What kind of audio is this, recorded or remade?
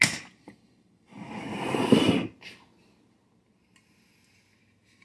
recorded